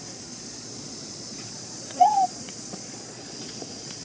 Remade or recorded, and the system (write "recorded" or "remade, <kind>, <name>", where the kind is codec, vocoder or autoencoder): remade, vocoder, Vocos